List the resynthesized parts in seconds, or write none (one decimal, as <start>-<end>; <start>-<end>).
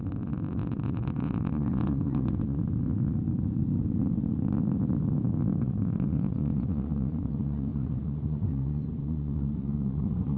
0.0-2.6; 5.6-10.4